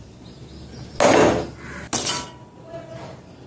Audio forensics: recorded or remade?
recorded